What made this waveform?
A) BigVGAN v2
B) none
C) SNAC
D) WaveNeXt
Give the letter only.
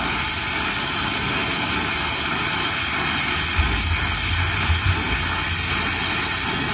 B